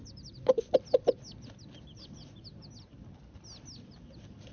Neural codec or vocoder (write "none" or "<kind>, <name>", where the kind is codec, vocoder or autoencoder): none